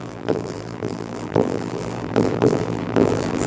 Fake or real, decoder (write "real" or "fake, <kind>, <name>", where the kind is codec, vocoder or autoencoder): fake, vocoder, BigVGAN v2